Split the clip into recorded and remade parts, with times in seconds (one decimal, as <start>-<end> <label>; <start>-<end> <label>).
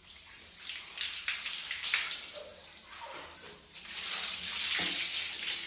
0.0-5.7 recorded